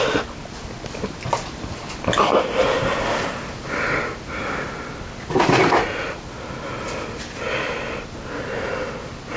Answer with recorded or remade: recorded